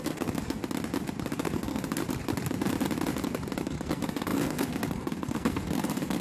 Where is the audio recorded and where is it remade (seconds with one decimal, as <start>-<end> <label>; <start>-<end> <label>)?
0.0-0.6 remade; 0.6-1.3 recorded; 1.3-2.0 remade; 2.0-3.6 recorded; 3.6-6.2 remade